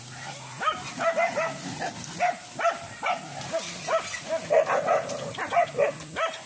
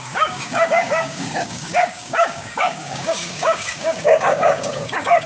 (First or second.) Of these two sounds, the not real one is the second